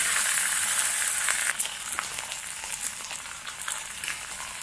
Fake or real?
real